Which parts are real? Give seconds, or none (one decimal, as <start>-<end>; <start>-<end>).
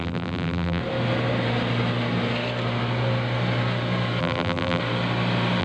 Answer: 0.8-4.2; 4.8-5.6